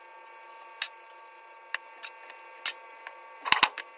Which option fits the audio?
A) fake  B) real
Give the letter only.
B